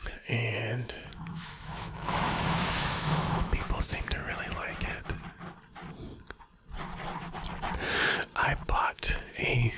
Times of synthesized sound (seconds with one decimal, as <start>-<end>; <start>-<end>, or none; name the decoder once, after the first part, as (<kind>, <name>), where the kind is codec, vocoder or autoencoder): 0.0-4.2 (autoencoder, DAC-VAE); 8.9-9.8